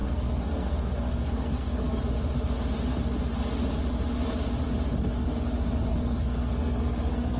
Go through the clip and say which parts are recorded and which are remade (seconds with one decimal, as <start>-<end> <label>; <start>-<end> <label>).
0.0-2.0 remade; 2.0-5.9 recorded; 5.9-7.4 remade